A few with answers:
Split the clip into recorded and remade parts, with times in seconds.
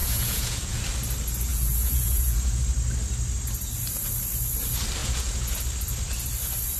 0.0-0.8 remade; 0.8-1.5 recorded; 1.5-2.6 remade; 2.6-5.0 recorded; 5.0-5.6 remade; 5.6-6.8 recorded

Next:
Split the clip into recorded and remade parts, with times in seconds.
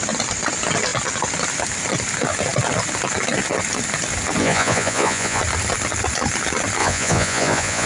0.0-4.4 recorded; 4.4-5.4 remade; 5.4-6.8 recorded; 6.8-7.9 remade